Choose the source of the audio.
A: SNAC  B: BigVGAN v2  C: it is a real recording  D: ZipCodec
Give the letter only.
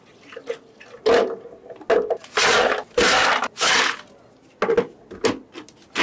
C